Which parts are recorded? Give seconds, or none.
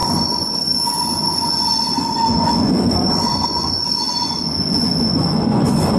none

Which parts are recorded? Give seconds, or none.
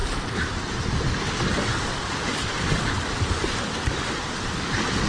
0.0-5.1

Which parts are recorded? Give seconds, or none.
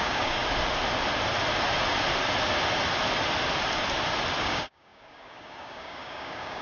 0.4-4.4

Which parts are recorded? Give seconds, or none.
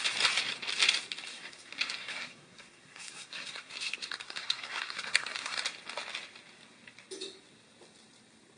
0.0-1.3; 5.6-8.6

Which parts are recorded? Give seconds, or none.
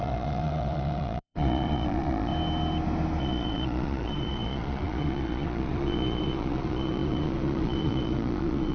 2.3-3.2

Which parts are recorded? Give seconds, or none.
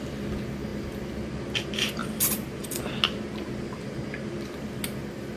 0.0-2.0; 2.8-5.4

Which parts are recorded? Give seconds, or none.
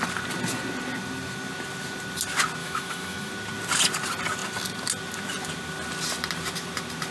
0.0-2.6; 3.3-7.1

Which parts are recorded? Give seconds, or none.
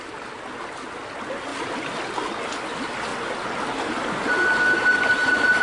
0.0-5.6